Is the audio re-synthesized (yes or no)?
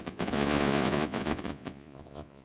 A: yes